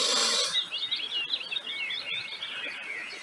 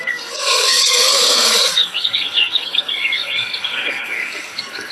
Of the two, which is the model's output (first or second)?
second